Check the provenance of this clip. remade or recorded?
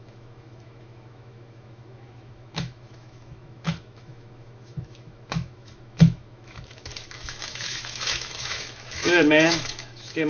remade